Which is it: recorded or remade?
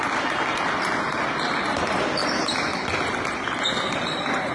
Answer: recorded